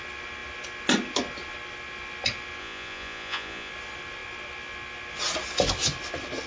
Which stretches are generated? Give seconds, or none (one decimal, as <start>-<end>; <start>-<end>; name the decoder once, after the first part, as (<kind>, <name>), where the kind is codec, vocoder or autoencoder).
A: 2.6-3.7 (vocoder, Vocos)